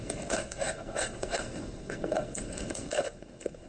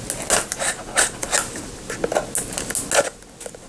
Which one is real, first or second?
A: second